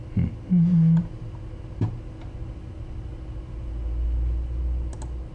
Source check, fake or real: real